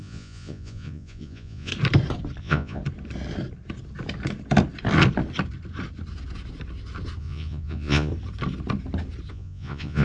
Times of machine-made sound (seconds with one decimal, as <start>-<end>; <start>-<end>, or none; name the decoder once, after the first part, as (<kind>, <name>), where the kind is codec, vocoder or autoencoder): 0.0-1.7 (vocoder, Vocos); 2.4-2.8; 7.2-8.1; 9.3-10.0